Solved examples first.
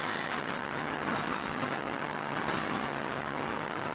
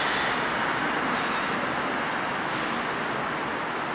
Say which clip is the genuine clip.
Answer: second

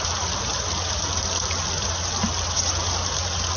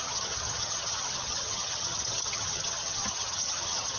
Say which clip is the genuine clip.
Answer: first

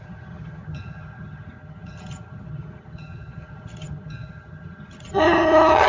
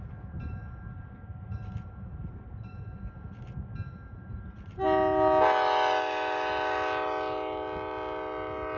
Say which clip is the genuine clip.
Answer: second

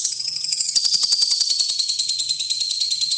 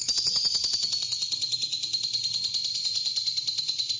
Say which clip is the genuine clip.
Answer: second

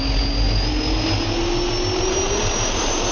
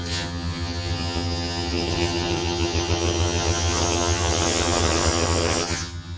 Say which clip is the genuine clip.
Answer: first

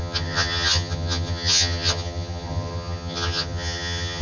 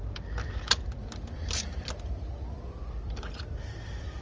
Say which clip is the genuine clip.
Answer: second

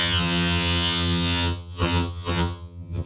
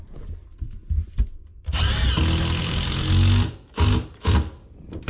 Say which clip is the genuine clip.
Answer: second